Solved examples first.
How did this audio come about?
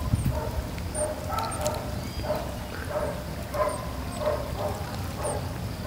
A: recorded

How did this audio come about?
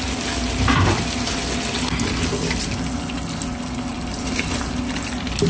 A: recorded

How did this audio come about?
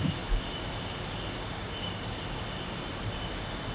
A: recorded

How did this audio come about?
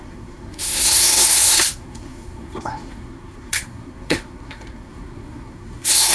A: remade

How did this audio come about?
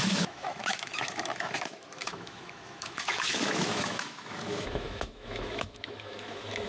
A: remade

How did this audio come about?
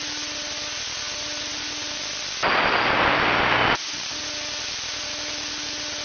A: recorded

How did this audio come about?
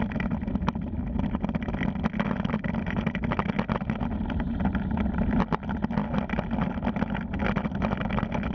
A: recorded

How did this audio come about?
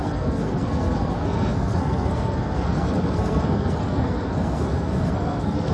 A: remade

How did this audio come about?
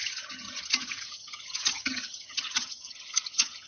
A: remade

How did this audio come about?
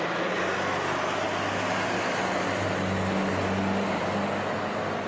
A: recorded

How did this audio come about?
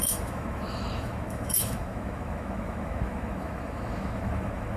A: remade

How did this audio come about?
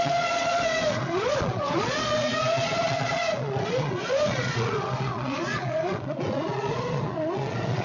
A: remade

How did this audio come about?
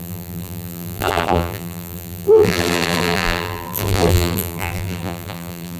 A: remade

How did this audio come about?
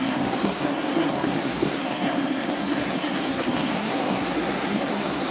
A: remade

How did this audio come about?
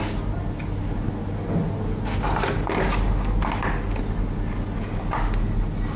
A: recorded